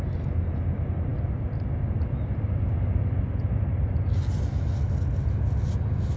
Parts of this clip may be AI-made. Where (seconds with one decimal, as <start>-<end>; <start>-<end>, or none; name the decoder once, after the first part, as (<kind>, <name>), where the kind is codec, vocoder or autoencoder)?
none